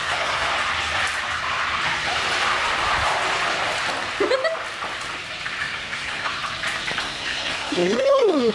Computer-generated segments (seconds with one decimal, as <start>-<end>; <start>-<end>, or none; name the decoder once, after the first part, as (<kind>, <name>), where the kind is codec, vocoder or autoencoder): 0.0-0.5 (codec, SNAC); 5.6-6.4; 7.0-8.5